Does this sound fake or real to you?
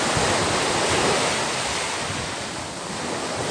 real